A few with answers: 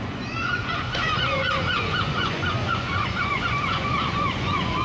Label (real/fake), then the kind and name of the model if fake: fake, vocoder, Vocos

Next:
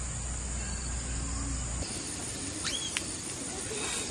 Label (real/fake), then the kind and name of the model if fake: real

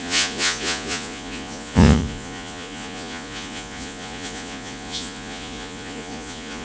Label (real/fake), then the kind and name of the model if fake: fake, vocoder, Vocos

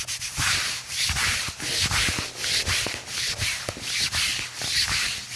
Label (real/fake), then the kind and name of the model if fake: real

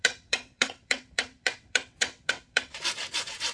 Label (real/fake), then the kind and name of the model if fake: fake, vocoder, WaveNeXt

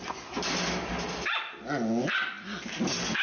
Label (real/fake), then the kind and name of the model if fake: real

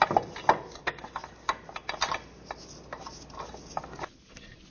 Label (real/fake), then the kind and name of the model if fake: real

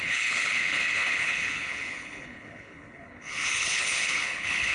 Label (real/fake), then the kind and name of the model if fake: fake, codec, HILCodec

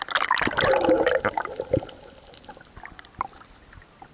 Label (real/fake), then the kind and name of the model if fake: real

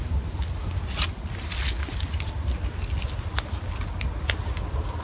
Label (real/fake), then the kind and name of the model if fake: real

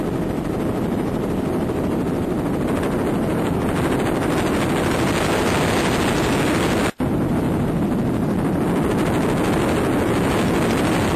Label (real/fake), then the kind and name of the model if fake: real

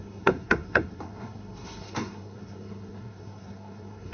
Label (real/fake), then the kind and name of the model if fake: fake, codec, SNAC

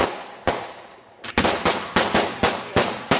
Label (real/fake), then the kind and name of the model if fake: real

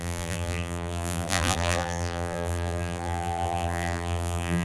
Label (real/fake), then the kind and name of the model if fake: fake, vocoder, BigVGAN v2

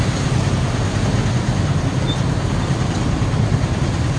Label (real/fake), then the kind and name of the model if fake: real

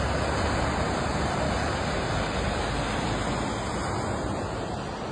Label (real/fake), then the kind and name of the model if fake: real